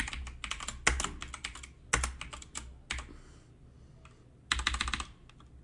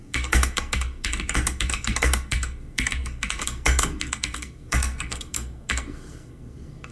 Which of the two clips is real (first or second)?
first